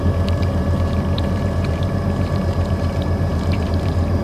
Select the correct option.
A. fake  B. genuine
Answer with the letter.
A